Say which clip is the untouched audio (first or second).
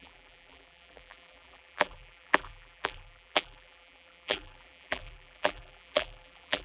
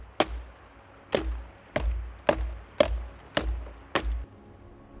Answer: second